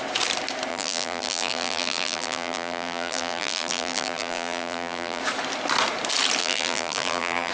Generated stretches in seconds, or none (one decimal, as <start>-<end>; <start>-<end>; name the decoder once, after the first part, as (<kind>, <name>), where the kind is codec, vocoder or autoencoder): 0.7-5.2 (vocoder, BigVGAN v2); 6.4-7.5